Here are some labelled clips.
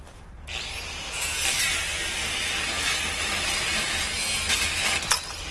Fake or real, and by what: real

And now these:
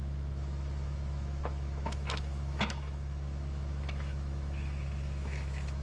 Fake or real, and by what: fake, autoencoder, DAC-VAE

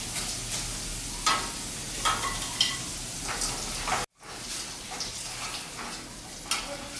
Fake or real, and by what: real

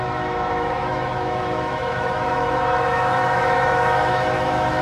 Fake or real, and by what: fake, autoencoder, DAC-VAE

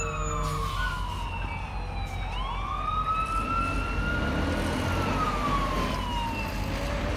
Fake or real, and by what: real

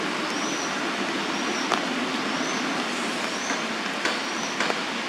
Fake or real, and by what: real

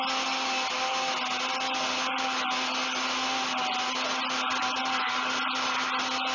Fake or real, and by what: real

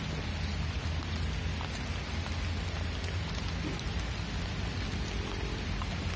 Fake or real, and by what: real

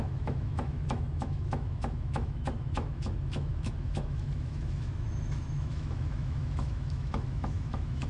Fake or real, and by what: fake, autoencoder, DAC-VAE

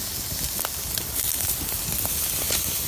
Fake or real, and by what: real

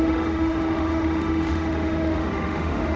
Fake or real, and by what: fake, autoencoder, DAC-VAE